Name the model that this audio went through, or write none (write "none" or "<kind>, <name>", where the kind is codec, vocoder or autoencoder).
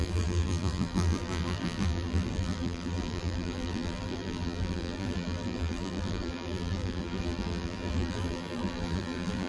vocoder, BigVGAN v2